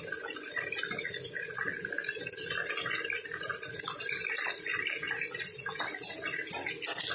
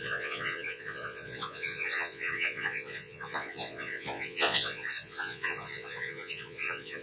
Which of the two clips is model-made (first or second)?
second